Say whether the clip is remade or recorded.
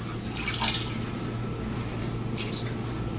recorded